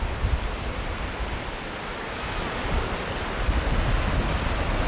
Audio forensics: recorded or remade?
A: recorded